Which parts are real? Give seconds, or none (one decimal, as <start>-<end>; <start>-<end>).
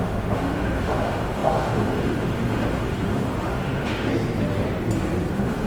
4.1-5.3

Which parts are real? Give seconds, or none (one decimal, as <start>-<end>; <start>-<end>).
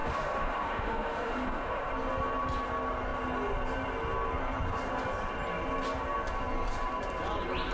1.9-7.7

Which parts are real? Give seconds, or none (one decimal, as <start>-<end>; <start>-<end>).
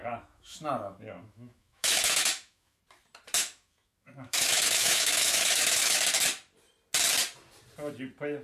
2.8-3.4; 6.1-8.4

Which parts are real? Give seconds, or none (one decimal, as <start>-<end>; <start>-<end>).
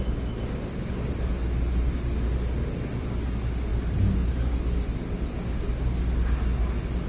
0.0-7.1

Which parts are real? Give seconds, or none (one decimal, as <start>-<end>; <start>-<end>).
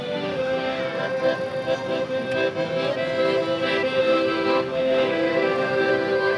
0.8-4.0; 5.3-5.9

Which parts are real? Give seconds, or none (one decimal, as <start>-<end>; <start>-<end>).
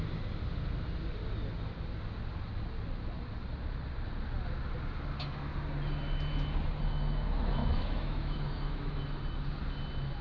0.0-7.6; 8.9-10.2